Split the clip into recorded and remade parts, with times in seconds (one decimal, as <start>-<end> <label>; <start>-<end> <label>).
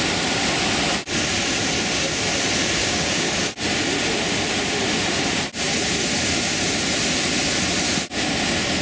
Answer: 0.0-2.8 recorded; 2.8-3.3 remade; 3.3-8.8 recorded